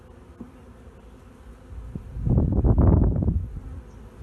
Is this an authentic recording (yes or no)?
yes